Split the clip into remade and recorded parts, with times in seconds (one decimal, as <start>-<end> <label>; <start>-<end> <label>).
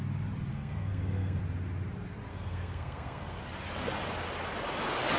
0.0-0.5 recorded; 0.5-1.4 remade; 1.4-2.3 recorded; 2.3-3.4 remade; 3.4-5.2 recorded